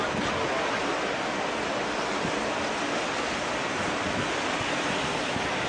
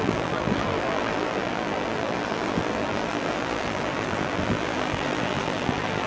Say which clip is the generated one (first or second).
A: second